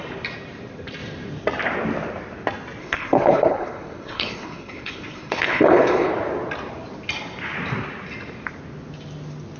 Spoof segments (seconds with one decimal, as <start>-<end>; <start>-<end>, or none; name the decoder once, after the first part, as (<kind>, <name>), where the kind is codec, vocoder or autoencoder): 2.8-6.1 (codec, HILCodec)